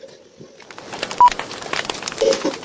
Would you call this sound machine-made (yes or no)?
no